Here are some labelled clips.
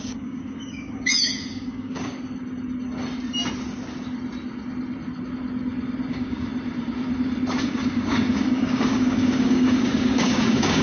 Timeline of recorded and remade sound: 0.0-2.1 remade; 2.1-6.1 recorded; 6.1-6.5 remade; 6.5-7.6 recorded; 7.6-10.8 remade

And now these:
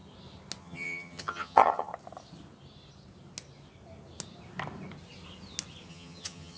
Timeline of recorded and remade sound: 0.0-0.6 recorded; 0.6-1.9 remade; 1.9-5.9 recorded; 5.9-6.6 remade

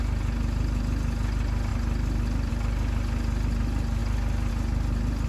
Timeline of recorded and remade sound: 0.0-5.3 recorded